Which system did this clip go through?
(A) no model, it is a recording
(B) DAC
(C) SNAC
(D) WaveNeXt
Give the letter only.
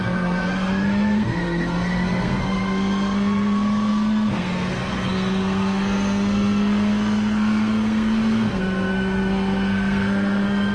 C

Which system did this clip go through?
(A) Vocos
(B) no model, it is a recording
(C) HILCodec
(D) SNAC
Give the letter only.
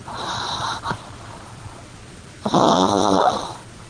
A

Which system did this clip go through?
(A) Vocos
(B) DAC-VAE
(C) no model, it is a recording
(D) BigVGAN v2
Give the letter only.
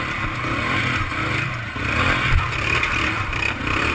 C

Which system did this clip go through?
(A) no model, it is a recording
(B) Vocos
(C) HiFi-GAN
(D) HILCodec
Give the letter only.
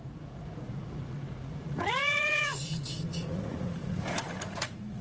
B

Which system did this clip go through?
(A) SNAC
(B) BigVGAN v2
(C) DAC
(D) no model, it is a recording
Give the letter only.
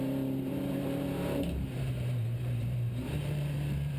B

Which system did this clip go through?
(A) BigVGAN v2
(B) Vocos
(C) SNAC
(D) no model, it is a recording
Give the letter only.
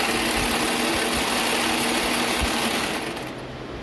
D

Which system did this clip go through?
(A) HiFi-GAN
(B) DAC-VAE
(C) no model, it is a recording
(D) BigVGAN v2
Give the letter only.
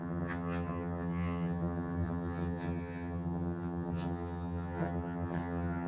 A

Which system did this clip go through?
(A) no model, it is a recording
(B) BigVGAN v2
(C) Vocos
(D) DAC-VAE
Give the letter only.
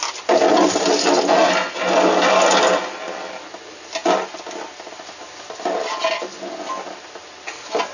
A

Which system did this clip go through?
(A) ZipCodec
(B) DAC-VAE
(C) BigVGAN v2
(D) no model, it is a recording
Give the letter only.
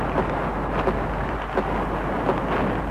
D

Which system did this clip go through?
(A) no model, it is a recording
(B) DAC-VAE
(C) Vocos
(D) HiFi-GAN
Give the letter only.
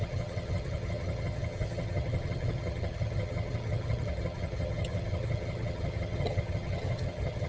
D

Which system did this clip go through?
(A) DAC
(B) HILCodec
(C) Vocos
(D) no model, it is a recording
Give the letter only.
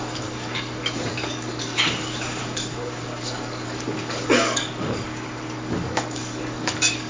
A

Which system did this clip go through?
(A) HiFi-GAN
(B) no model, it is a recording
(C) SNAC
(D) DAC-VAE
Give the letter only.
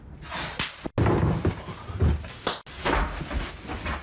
B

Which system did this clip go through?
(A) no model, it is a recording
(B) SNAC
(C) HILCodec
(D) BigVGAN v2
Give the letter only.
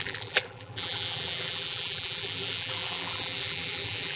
D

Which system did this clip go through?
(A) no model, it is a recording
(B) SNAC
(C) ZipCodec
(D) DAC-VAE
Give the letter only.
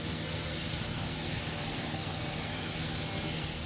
B